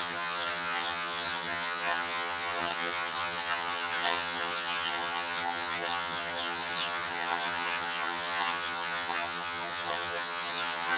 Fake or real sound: fake